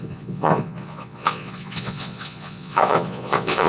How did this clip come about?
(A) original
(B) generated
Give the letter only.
B